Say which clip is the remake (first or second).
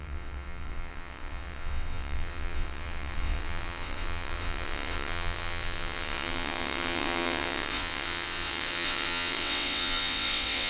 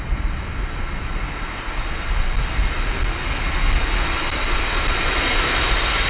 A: first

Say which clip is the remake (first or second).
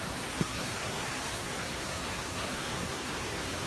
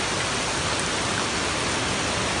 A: first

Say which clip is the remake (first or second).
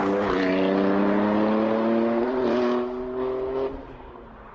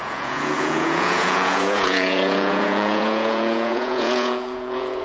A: second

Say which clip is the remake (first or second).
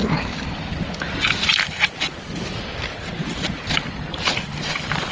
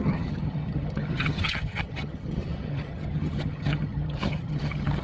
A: second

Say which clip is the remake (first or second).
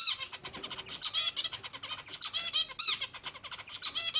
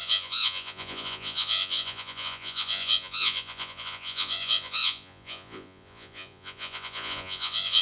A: second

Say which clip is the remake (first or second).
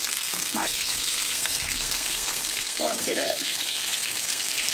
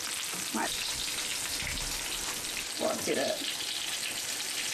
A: first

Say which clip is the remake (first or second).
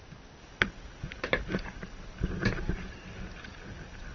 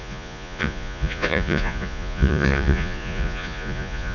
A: second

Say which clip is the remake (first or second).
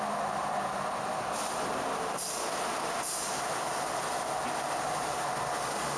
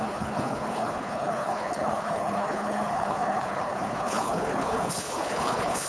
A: second